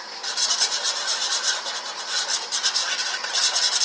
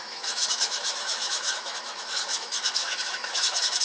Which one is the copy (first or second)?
second